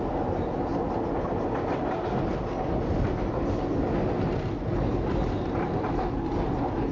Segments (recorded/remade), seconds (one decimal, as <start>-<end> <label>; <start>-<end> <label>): 0.0-6.9 recorded

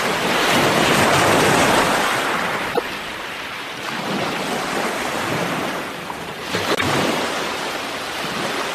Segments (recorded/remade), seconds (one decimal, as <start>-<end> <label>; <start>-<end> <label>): 0.0-8.7 recorded

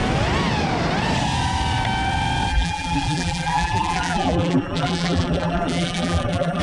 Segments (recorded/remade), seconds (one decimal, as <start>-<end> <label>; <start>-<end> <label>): 0.0-2.5 recorded; 2.5-6.6 remade

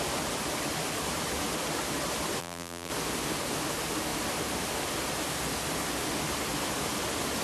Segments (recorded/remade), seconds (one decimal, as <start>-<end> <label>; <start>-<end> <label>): 0.0-2.4 recorded; 2.4-2.9 remade; 2.9-7.4 recorded

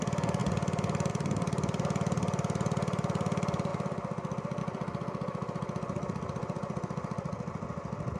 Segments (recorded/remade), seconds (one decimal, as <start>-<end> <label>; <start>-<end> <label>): 0.0-0.4 remade; 0.4-1.1 recorded; 1.1-3.7 remade; 3.7-4.6 recorded; 4.6-8.2 remade

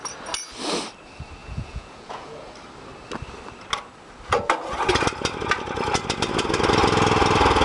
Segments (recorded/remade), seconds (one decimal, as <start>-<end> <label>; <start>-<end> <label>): 0.0-1.4 recorded; 1.4-2.5 remade; 2.5-7.6 recorded